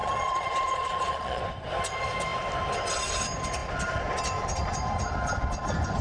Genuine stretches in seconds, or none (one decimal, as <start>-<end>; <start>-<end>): 1.4-6.0